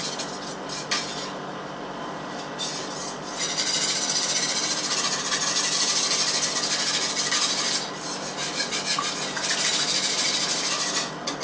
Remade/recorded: recorded